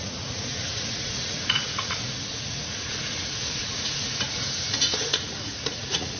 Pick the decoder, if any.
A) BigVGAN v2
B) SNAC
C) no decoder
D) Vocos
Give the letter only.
D